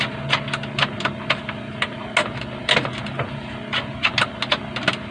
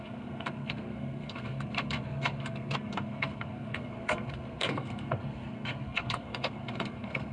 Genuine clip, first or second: first